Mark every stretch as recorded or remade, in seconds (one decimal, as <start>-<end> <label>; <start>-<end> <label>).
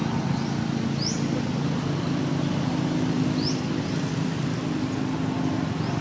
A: 0.0-6.0 recorded